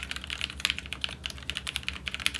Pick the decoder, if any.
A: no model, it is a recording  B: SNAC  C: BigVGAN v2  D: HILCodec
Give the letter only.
A